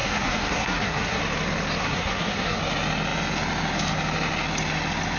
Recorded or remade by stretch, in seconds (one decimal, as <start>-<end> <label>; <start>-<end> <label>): 0.0-1.2 remade; 1.2-1.8 recorded; 1.8-2.6 remade; 2.6-5.2 recorded